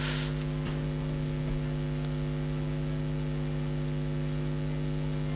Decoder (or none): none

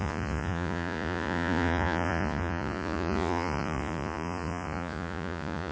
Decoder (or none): vocoder, Vocos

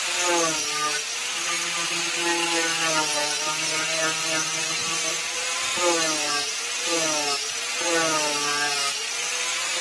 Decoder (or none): none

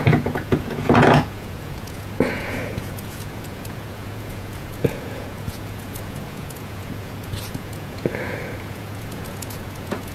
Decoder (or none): vocoder, Vocos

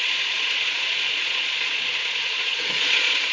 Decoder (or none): vocoder, Vocos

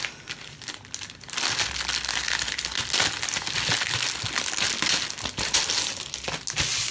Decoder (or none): none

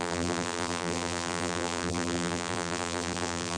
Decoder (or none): vocoder, BigVGAN v2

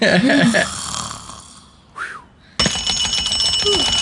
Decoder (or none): none